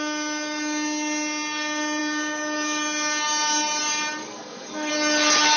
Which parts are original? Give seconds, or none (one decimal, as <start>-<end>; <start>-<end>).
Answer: 0.0-4.2; 4.9-5.6